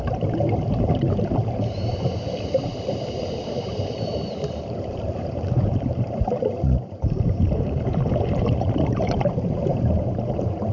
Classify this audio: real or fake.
fake